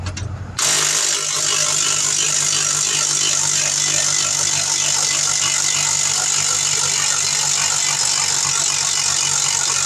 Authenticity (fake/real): real